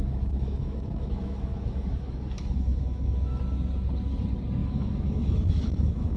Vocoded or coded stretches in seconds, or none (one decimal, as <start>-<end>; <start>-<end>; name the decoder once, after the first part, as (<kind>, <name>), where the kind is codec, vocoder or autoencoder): 0.0-3.4 (autoencoder, DAC-VAE); 4.6-6.2